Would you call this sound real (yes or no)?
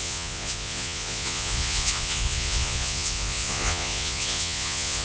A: no